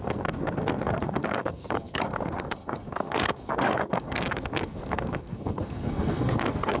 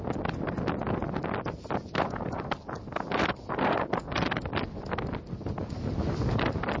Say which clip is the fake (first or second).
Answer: first